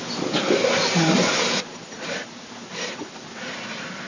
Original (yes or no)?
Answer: yes